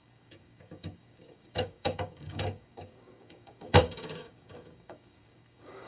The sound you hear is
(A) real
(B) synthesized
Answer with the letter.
B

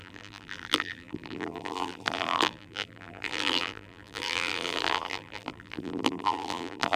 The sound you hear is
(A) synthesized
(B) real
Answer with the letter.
A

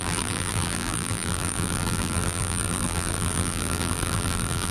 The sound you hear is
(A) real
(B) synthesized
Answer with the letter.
B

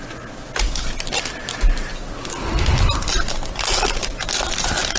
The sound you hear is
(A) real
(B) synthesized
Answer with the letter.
A